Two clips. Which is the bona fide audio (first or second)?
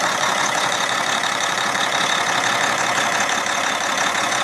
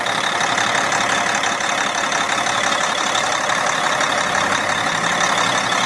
second